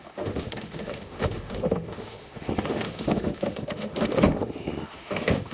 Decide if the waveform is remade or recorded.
remade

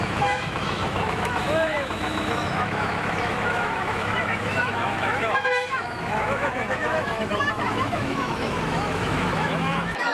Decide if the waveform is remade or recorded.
remade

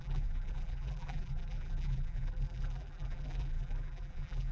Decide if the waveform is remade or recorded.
remade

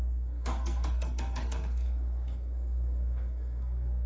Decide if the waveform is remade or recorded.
remade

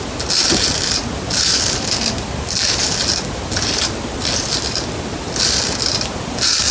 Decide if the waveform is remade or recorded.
recorded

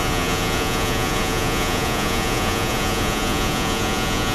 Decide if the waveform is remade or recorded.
remade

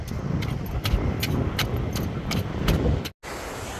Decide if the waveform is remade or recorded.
recorded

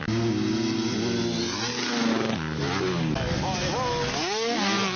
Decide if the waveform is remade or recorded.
recorded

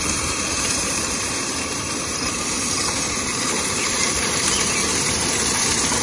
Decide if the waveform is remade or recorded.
remade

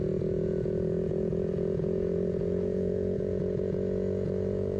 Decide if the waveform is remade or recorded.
remade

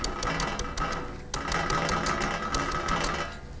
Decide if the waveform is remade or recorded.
recorded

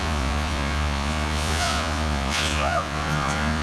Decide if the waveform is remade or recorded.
remade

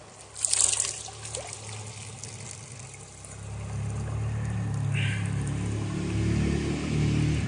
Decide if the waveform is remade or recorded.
recorded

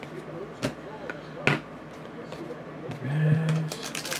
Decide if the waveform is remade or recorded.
recorded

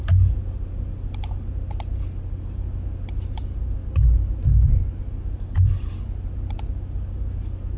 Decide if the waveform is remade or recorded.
recorded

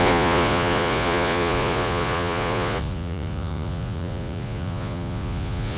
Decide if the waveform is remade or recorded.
remade